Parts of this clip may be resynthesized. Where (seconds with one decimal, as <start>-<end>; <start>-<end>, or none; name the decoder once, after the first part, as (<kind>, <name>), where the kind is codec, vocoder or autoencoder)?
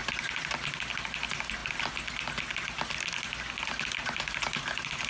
none